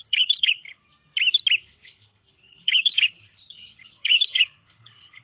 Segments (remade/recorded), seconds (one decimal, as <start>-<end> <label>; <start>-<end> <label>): 0.0-0.8 remade; 0.8-1.6 recorded; 1.6-5.2 remade